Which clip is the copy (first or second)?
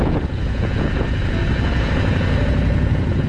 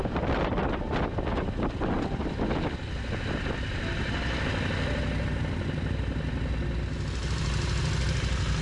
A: first